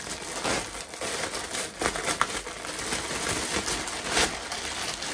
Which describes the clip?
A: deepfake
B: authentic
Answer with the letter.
B